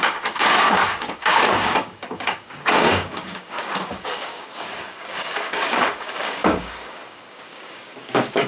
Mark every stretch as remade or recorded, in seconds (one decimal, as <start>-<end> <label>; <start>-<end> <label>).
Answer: 0.0-8.5 remade